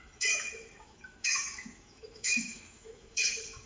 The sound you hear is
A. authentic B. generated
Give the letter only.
B